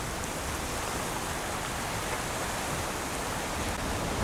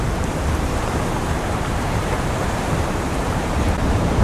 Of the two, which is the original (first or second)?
first